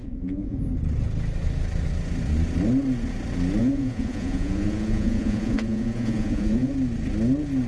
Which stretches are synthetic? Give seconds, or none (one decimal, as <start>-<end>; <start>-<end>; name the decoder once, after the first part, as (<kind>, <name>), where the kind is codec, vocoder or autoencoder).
0.0-0.6 (vocoder, Vocos); 3.6-6.7